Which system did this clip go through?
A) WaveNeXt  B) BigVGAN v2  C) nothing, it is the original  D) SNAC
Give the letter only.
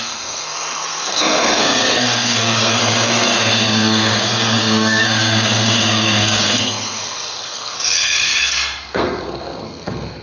D